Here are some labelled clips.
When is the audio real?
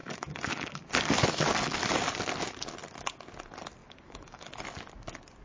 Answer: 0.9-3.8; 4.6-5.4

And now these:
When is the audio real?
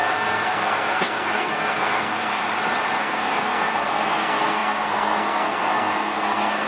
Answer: 2.4-3.0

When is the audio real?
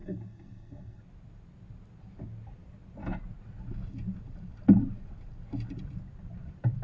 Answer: 1.0-6.8